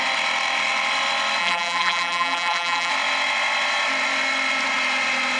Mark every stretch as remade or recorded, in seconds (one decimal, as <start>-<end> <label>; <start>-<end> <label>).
0.0-1.4 recorded; 1.4-2.9 remade; 2.9-5.4 recorded

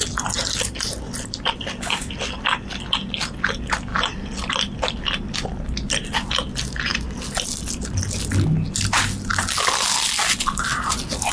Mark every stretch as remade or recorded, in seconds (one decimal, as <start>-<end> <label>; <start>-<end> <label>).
0.0-3.9 recorded; 3.9-4.5 remade; 4.5-9.3 recorded; 9.3-11.3 remade

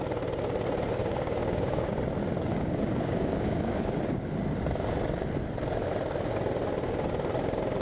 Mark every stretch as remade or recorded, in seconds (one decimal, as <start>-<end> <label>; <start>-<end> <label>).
0.0-1.0 recorded; 1.0-1.9 remade; 1.9-2.5 recorded; 2.5-4.0 remade; 4.0-7.8 recorded

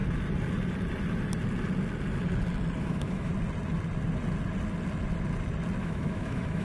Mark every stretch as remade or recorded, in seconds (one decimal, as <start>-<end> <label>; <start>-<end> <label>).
0.0-2.8 recorded; 2.8-3.3 remade; 3.3-5.8 recorded; 5.8-6.6 remade